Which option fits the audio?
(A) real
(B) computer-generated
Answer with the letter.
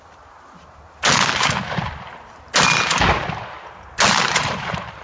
A